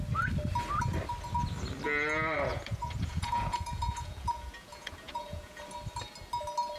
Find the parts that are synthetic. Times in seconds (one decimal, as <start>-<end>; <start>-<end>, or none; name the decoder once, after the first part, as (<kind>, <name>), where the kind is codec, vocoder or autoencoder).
2.5-5.6 (vocoder, Vocos)